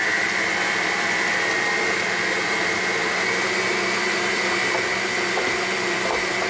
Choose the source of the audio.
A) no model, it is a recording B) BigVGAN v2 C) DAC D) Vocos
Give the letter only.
B